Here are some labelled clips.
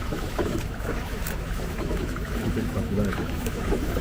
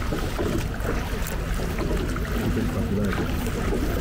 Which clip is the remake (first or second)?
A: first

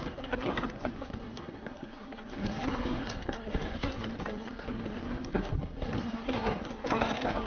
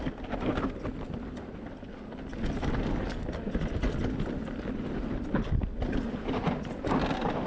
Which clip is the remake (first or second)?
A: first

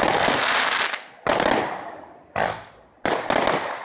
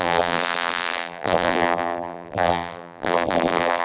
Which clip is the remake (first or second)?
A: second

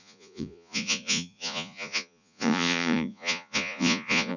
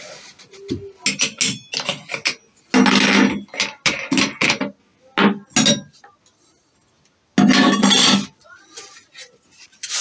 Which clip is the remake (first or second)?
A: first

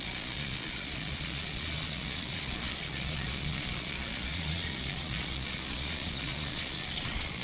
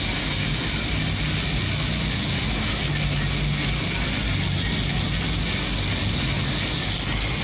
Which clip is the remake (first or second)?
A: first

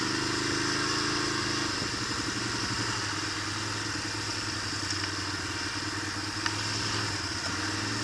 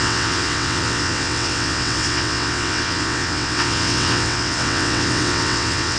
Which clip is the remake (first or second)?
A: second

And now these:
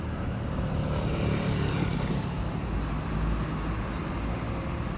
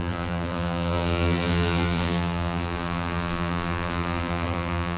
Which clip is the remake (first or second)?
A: second